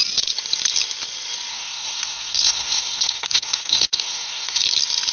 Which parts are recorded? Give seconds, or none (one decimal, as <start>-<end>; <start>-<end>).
0.0-1.5; 4.6-5.1